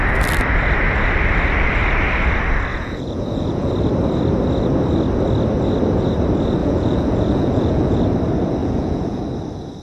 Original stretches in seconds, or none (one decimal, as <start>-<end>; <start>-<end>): 0.0-2.7; 3.7-6.6; 8.0-8.6; 9.2-9.8